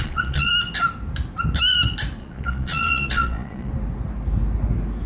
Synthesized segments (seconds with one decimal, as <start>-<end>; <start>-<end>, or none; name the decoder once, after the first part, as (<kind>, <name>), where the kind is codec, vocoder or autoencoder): 0.0-0.5 (vocoder, Vocos); 2.2-3.7